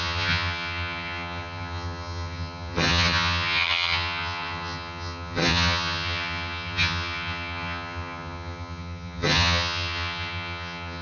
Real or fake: fake